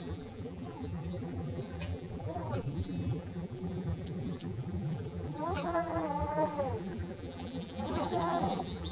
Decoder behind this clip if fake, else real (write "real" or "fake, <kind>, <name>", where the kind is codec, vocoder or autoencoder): fake, vocoder, BigVGAN v2